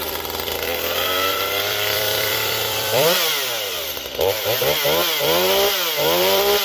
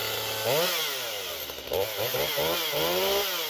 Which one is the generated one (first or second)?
first